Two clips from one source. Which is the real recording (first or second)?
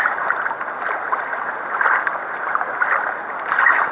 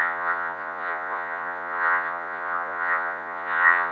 first